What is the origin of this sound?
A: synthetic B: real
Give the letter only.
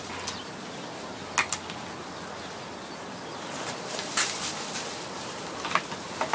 B